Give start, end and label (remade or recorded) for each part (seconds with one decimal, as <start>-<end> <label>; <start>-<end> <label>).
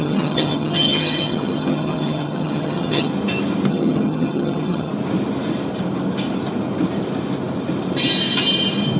0.0-3.1 remade; 3.1-3.7 recorded; 3.7-4.9 remade; 4.9-9.0 recorded